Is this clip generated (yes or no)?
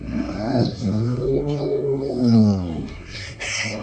yes